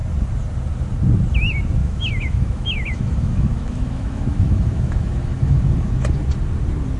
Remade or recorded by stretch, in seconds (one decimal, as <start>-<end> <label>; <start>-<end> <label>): 0.0-1.8 recorded; 1.8-5.6 remade; 5.6-7.0 recorded